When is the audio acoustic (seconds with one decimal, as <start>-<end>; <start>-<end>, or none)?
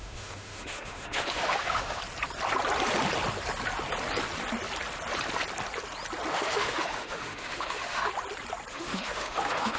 2.0-6.3; 8.1-8.7